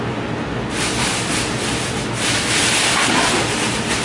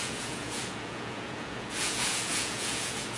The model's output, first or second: second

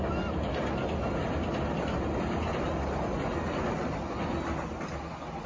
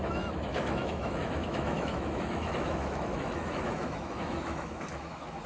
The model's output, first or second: second